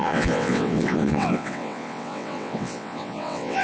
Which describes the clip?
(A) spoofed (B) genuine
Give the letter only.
A